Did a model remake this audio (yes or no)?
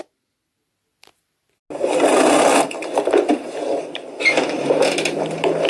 no